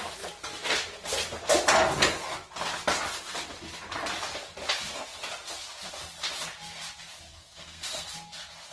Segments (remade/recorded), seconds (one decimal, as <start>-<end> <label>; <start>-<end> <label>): 0.0-7.3 recorded; 7.3-8.1 remade; 8.1-8.7 recorded